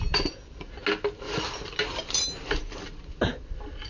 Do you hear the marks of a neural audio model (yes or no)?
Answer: no